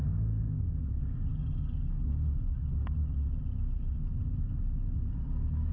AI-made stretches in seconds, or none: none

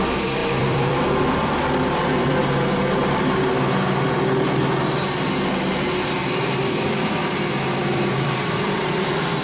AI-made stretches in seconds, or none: 0.0-2.4 (vocoder, BigVGAN v2); 6.9-9.4

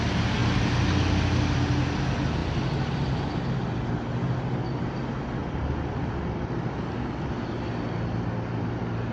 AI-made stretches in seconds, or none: 2.4-3.4 (vocoder, BigVGAN v2); 5.4-6.7

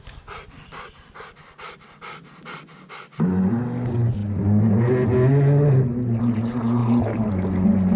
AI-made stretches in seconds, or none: none

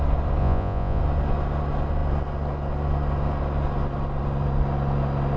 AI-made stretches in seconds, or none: 0.4-1.0 (vocoder, Vocos)

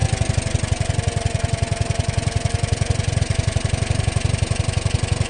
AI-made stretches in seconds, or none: none